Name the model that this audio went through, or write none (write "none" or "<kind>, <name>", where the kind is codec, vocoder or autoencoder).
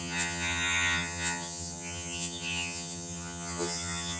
vocoder, HiFi-GAN